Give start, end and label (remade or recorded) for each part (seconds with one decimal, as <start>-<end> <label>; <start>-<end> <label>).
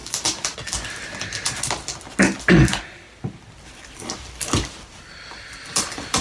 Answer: 0.0-2.5 recorded; 2.5-6.2 remade